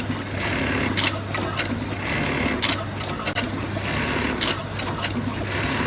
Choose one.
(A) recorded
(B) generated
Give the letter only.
A